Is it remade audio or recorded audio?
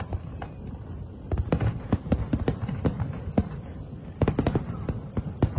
recorded